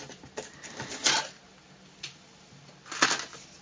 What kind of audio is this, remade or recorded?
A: recorded